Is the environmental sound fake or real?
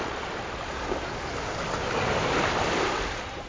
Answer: real